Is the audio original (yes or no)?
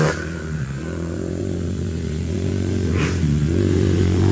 no